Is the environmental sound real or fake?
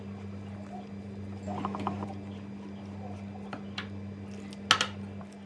real